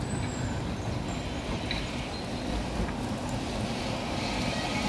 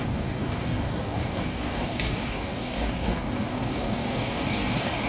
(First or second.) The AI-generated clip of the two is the second